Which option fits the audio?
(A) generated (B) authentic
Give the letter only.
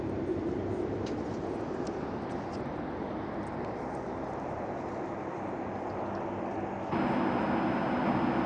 B